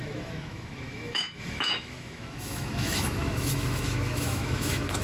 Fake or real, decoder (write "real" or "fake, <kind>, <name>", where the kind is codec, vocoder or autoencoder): fake, autoencoder, DAC-VAE